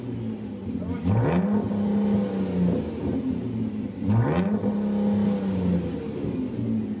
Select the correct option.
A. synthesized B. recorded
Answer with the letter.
B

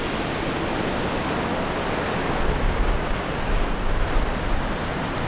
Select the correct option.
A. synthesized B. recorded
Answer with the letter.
B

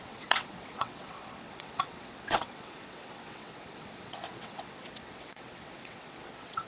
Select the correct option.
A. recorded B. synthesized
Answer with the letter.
B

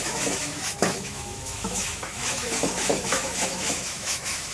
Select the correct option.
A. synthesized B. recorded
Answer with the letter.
A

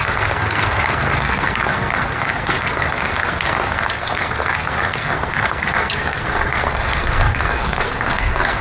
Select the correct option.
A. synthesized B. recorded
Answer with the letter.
A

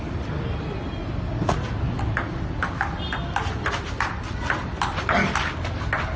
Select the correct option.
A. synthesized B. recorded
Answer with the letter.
B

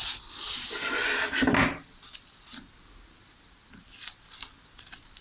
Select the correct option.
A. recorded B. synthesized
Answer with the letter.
A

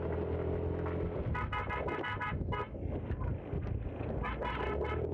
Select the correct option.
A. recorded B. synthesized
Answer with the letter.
A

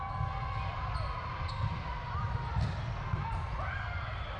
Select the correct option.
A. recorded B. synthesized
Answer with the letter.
A